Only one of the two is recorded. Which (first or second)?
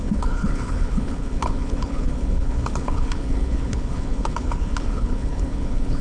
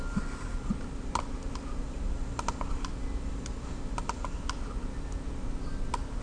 second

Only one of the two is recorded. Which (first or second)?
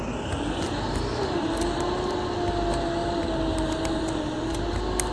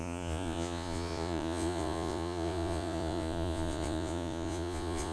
first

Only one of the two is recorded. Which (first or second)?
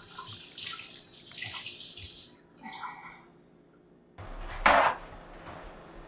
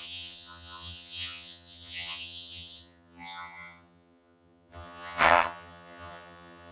first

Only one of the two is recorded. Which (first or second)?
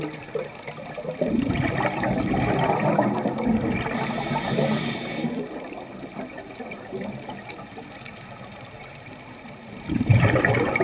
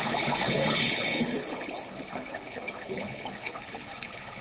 first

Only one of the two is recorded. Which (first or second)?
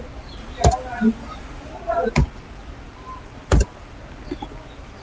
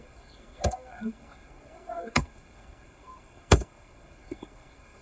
first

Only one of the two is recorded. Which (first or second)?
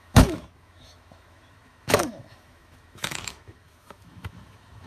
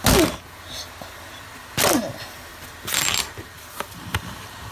second